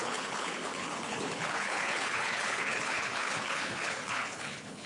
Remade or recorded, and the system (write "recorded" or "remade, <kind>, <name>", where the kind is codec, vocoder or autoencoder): remade, codec, HILCodec